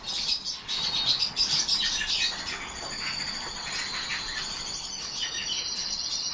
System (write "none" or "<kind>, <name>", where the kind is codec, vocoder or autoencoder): none